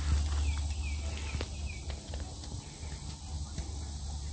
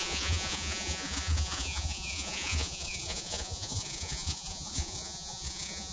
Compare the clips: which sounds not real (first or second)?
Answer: second